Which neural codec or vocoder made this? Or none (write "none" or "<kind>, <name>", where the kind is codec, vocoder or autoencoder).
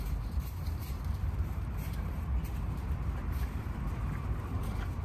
vocoder, BigVGAN v2